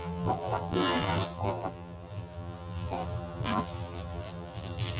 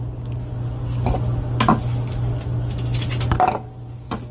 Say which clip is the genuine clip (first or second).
second